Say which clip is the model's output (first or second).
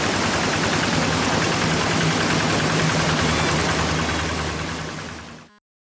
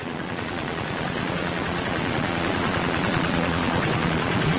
second